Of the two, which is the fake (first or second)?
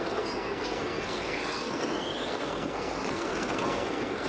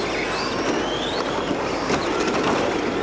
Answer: first